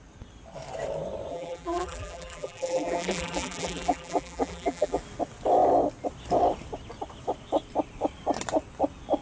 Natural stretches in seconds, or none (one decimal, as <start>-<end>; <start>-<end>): 0.0-1.3; 5.0-9.2